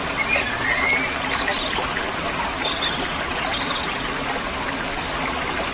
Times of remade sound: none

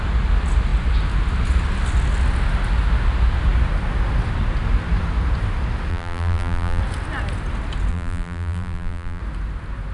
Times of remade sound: 5.9-6.8 (vocoder, BigVGAN v2); 7.9-9.2

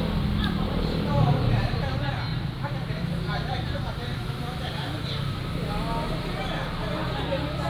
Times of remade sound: 0.4-1.5 (vocoder, BigVGAN v2); 2.3-4.8

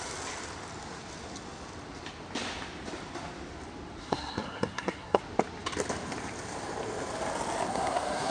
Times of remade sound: 4.0-5.2 (codec, SNAC); 7.7-8.3

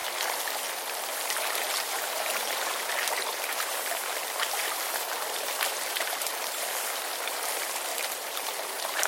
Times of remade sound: 1.1-2.9 (vocoder, BigVGAN v2); 3.3-6.6; 7.9-9.1